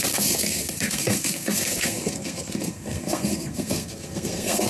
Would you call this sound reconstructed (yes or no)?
yes